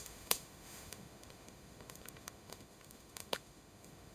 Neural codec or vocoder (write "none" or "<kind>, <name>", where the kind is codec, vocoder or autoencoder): autoencoder, DAC-VAE